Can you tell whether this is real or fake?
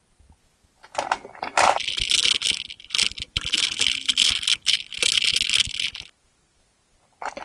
real